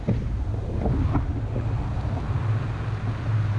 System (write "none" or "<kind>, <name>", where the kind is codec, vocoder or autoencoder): none